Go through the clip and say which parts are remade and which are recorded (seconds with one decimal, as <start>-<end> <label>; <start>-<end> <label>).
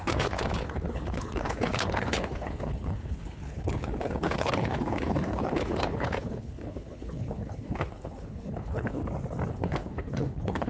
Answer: 0.0-9.0 remade; 9.0-9.5 recorded; 9.5-10.7 remade